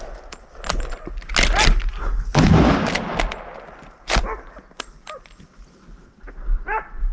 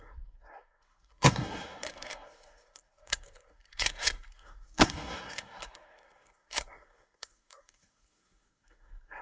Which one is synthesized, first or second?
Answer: second